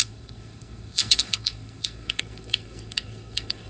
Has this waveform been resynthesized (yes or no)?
yes